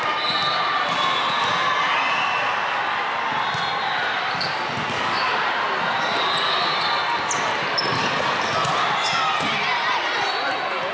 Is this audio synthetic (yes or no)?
no